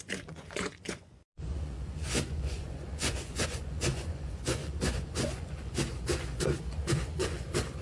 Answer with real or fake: fake